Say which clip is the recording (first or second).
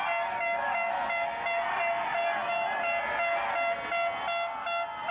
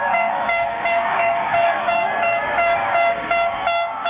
first